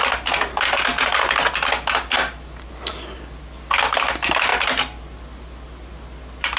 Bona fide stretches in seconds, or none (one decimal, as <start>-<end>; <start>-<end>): 0.0-6.6